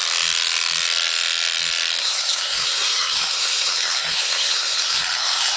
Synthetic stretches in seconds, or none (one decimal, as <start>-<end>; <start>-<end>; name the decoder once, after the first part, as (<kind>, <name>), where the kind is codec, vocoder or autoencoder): 2.0-5.6 (codec, SNAC)

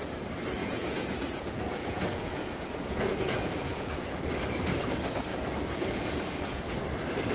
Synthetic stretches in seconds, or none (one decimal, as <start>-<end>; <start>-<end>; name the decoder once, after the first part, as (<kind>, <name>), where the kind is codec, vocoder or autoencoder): 0.6-4.3 (vocoder, Vocos); 5.3-6.7

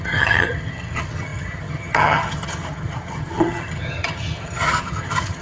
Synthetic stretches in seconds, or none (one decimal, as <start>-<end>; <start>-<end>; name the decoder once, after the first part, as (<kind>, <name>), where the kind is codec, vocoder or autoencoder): 0.0-5.4 (vocoder, HiFi-GAN)

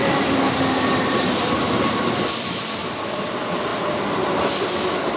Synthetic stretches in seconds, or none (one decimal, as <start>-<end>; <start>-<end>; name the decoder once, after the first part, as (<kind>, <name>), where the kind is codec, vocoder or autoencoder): none

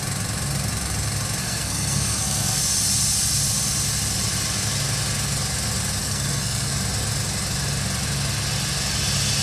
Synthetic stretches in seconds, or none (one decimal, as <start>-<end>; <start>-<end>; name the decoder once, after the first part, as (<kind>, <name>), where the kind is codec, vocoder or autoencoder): 1.4-2.6 (codec, SNAC); 6.0-6.7

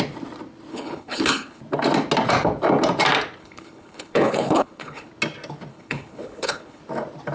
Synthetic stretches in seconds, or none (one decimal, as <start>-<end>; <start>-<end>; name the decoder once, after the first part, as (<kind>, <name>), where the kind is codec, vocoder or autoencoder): 0.7-1.6 (codec, HILCodec); 3.4-5.1; 5.7-6.8

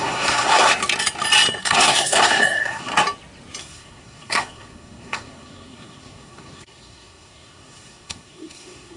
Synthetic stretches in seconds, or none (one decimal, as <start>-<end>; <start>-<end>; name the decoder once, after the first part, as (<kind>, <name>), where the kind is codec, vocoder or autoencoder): 0.0-0.7 (codec, SNAC); 1.6-2.9; 3.6-9.0

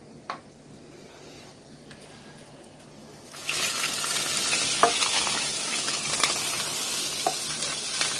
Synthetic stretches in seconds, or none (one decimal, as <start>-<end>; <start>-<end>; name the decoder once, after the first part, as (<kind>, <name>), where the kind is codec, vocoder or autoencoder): 3.0-3.9 (autoencoder, DAC-VAE); 4.8-6.0